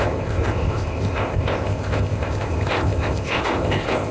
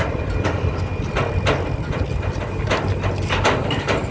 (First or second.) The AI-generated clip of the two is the first